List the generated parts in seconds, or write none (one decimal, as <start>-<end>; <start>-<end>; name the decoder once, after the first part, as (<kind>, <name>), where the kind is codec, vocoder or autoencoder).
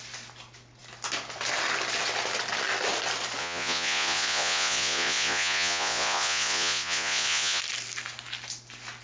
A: 3.4-7.6 (vocoder, Vocos)